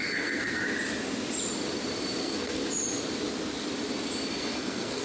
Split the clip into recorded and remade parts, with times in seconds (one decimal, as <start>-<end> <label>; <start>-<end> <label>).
0.0-0.6 remade; 0.6-2.2 recorded; 2.2-2.6 remade; 2.6-4.3 recorded; 4.3-5.0 remade